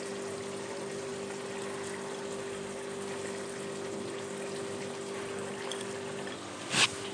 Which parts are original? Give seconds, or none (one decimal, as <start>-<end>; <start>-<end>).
0.0-7.1